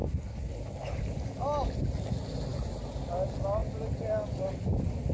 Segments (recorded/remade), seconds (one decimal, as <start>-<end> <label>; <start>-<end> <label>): 0.0-0.5 remade; 0.5-5.1 recorded